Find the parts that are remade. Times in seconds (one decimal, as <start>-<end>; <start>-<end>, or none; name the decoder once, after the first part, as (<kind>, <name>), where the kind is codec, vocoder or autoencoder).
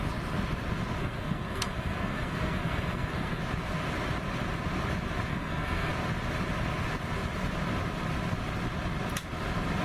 1.0-3.4 (codec, SNAC); 5.3-5.9